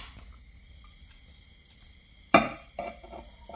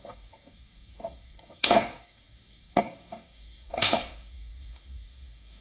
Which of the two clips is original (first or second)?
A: first